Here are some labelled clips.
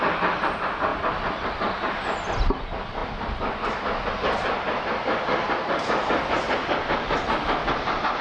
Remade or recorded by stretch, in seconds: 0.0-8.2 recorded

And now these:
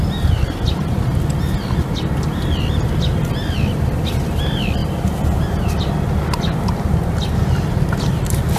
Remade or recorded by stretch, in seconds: 0.0-8.6 recorded

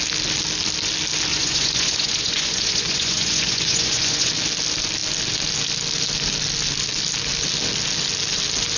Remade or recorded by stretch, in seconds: 0.0-1.3 recorded; 1.3-4.3 remade; 4.3-8.8 recorded

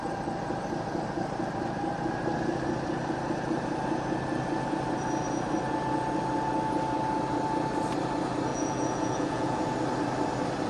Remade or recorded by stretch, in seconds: 0.0-8.5 recorded; 8.5-9.6 remade; 9.6-10.7 recorded